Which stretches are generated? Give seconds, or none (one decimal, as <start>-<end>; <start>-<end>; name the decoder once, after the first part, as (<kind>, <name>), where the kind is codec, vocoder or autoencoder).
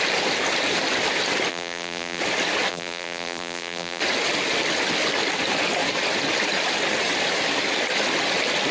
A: 1.5-2.2 (vocoder, BigVGAN v2); 2.7-4.0